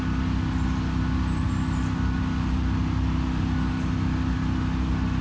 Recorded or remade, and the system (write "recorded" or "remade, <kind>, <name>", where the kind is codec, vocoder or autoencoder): recorded